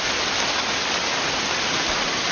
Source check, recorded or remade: recorded